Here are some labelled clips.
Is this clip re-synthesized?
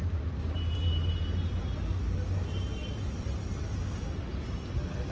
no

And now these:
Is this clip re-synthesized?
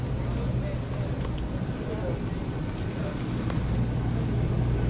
no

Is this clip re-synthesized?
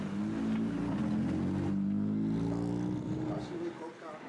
no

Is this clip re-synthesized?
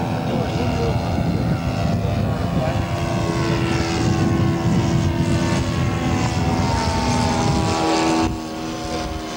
no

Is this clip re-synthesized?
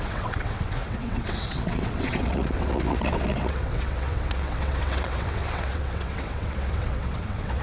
yes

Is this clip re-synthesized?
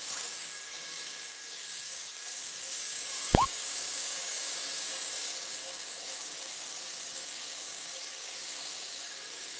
yes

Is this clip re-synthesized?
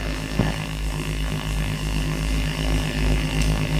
yes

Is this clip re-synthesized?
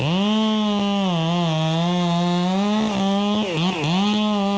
no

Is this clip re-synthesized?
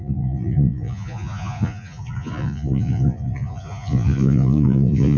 yes